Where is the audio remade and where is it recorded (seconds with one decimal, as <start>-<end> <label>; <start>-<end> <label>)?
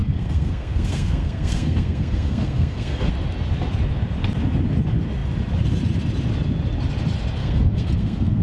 0.0-3.1 remade; 3.1-7.4 recorded; 7.4-8.4 remade